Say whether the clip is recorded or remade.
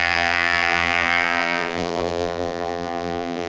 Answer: remade